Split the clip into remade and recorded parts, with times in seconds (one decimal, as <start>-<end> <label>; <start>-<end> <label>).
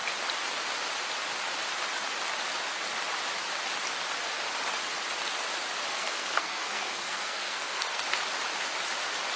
0.0-5.9 recorded; 5.9-8.0 remade; 8.0-9.4 recorded